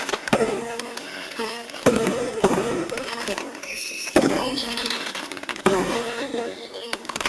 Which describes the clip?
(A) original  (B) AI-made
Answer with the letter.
B